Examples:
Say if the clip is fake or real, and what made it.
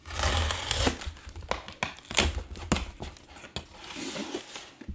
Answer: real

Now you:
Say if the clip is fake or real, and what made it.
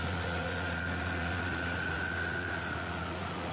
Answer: fake, vocoder, Vocos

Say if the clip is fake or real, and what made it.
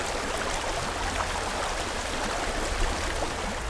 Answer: real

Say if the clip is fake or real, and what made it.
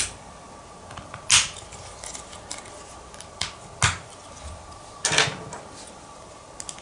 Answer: real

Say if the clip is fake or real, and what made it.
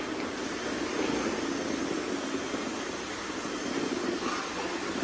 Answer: real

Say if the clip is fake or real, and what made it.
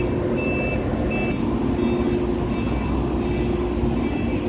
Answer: real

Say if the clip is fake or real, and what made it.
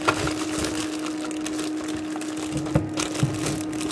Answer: real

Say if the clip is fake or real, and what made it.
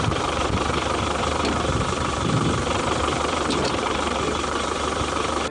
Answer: fake, vocoder, BigVGAN v2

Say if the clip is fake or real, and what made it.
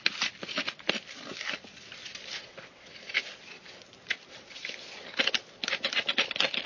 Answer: real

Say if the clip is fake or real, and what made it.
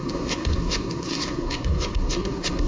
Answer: fake, codec, SNAC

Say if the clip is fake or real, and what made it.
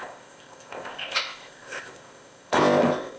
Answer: fake, codec, ZipCodec